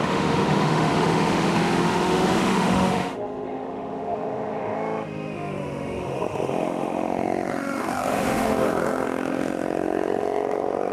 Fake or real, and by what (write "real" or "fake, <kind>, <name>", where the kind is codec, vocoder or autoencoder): fake, autoencoder, DAC-VAE